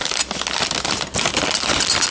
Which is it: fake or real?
real